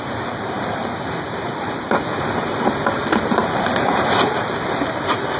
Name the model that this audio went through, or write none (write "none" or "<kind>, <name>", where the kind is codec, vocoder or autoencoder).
vocoder, BigVGAN v2